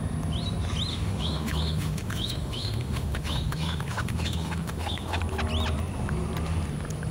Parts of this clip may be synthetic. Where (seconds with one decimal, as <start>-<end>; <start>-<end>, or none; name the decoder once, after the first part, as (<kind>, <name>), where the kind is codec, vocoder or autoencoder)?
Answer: 0.9-5.2 (autoencoder, DAC-VAE)